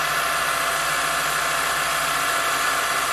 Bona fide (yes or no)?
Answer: yes